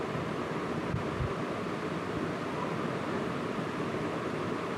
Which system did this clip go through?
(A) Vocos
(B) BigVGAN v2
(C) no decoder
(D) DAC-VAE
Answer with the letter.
C